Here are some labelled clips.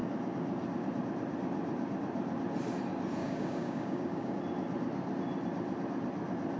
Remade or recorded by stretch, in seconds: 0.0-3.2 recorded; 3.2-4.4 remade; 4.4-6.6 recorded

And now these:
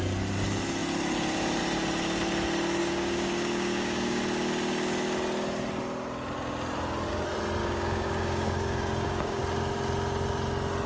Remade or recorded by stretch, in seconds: 0.0-2.8 recorded; 2.8-4.2 remade; 4.2-7.6 recorded; 7.6-9.4 remade; 9.4-10.9 recorded

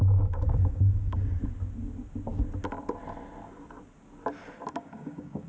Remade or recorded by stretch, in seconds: 0.0-1.4 remade; 1.4-4.7 recorded; 4.7-5.5 remade

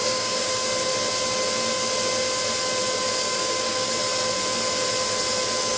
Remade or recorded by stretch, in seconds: 0.0-0.5 remade; 0.5-3.2 recorded; 3.2-3.9 remade; 3.9-5.8 recorded

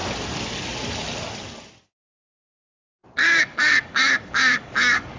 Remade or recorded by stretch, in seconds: 0.0-3.2 recorded; 3.2-5.2 remade

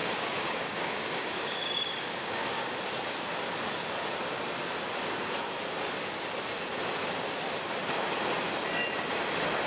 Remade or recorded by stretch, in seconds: 0.0-2.7 remade; 2.7-9.7 recorded